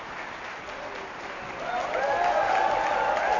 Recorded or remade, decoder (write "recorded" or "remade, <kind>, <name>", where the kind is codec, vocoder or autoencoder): recorded